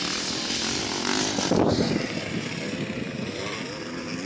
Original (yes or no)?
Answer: yes